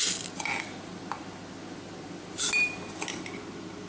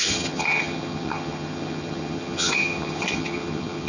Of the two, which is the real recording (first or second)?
first